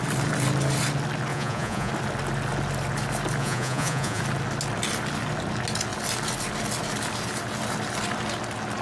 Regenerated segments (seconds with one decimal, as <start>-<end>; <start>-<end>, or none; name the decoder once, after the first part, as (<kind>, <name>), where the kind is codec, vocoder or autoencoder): 1.3-1.9 (vocoder, Vocos); 3.4-4.2